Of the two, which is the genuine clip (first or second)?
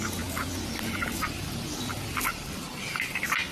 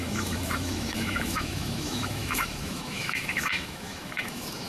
first